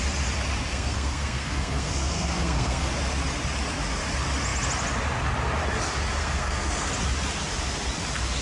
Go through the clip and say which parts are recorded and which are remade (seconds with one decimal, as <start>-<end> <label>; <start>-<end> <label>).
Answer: 0.0-0.7 recorded; 0.7-2.9 remade; 2.9-6.2 recorded; 6.2-6.9 remade; 6.9-8.4 recorded